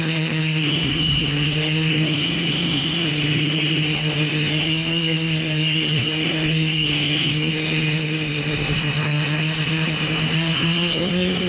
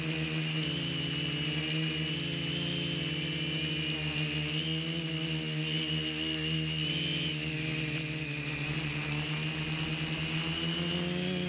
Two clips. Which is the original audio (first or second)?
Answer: second